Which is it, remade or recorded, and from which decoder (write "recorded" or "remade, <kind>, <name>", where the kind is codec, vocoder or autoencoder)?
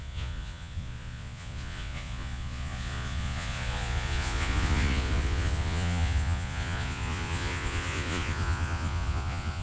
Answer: remade, vocoder, Vocos